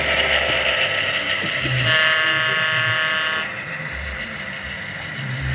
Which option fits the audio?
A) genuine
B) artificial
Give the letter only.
A